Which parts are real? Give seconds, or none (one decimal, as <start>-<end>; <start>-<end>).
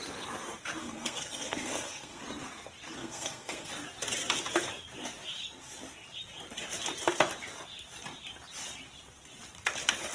0.0-0.8; 2.2-3.0; 3.7-10.1